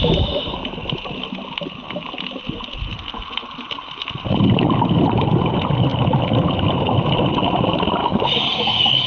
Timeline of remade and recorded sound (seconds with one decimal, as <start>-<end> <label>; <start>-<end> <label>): 0.0-8.0 recorded; 8.0-9.1 remade